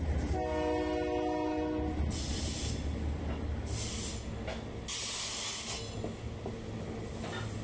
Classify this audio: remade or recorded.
recorded